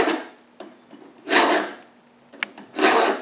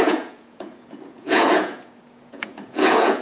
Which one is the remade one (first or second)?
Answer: second